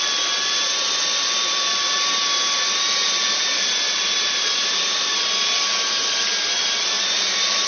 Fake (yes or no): no